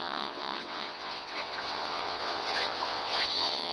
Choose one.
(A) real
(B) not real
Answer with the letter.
B